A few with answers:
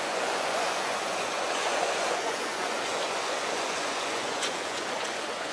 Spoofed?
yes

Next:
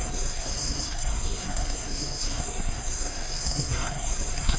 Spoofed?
yes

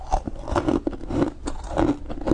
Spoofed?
no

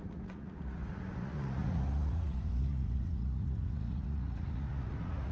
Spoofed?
yes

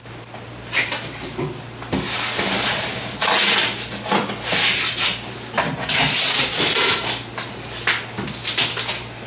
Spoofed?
no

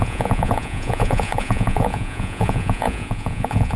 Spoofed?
yes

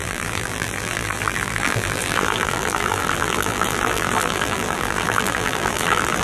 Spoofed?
yes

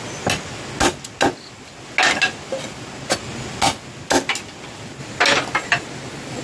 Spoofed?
no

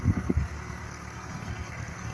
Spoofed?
yes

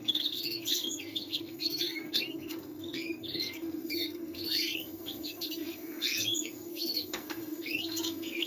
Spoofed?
yes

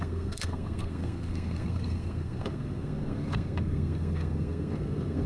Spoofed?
yes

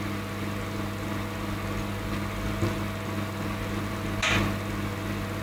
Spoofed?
no